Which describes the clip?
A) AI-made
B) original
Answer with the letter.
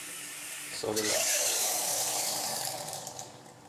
A